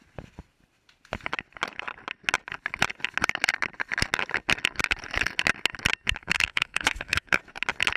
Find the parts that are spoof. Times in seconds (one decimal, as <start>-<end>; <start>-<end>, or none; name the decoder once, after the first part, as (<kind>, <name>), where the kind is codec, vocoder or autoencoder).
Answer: 6.2-7.4 (codec, SNAC)

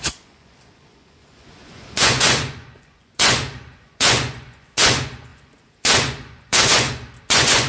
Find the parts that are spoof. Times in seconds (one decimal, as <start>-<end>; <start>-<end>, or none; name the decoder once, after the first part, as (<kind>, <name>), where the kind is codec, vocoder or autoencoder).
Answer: 0.0-7.7 (vocoder, Vocos)

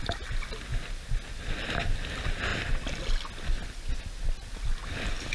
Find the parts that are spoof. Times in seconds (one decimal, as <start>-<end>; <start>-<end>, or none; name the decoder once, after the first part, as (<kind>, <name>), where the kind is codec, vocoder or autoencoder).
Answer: none

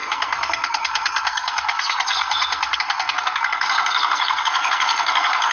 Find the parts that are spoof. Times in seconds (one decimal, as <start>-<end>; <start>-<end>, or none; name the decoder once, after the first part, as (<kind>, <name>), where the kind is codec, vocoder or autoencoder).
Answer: 0.0-5.5 (codec, SNAC)

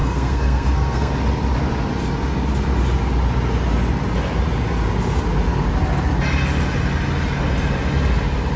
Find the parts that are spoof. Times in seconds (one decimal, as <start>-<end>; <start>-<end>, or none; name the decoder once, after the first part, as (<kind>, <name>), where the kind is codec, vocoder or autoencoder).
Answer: 0.0-1.1 (codec, SNAC)

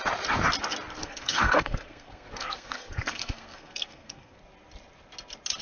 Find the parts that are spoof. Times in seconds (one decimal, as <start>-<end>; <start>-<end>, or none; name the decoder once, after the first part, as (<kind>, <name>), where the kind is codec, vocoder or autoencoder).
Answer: 1.0-4.4 (codec, SNAC)

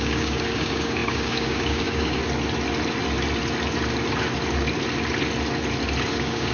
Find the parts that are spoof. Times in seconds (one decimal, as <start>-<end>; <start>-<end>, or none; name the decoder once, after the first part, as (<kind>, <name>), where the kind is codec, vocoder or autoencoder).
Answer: 0.0-2.2 (codec, DAC); 6.1-6.5

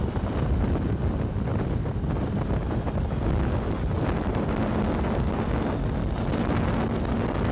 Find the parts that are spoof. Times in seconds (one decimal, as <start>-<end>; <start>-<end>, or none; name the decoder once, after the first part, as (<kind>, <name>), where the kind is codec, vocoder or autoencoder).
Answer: none